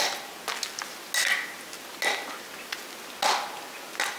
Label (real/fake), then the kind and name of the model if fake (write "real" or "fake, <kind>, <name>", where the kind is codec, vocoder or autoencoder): real